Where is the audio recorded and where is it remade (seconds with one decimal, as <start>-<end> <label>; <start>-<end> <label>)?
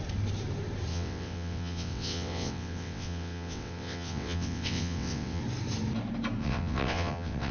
0.0-0.9 recorded; 0.9-5.4 remade; 5.4-6.4 recorded; 6.4-7.5 remade